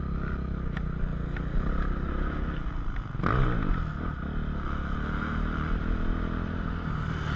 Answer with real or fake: real